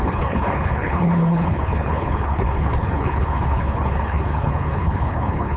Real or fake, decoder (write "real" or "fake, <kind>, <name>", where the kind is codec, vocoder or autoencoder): fake, codec, HILCodec